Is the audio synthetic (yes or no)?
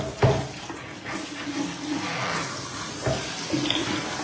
no